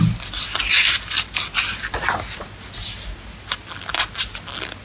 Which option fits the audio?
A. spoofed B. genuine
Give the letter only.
B